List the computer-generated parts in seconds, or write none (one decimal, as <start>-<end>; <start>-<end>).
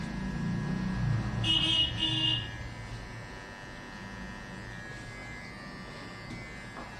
none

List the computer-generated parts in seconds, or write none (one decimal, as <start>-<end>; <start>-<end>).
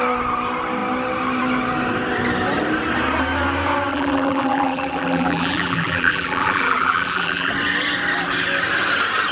3.9-7.5